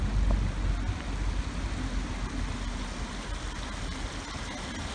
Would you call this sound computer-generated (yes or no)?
no